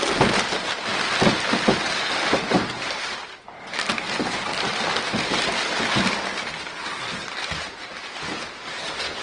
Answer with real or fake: real